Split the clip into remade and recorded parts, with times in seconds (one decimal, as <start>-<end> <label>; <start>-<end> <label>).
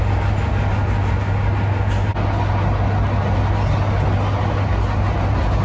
0.0-5.6 recorded